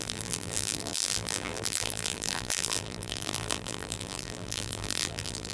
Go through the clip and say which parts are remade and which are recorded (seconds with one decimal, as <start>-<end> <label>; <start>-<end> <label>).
0.0-5.5 remade